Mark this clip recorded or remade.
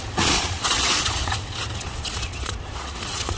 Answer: remade